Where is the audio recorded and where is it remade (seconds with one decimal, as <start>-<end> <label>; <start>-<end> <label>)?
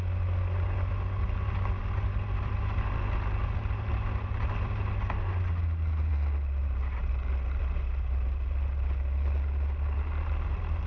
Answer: 0.0-10.9 recorded